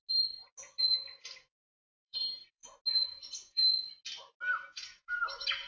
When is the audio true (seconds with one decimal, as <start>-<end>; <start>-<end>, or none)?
0.0-1.9; 2.6-3.2; 3.6-4.5